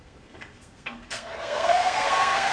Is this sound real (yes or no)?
no